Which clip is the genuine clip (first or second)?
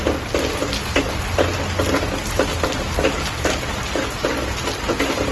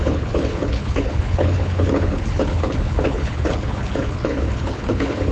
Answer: first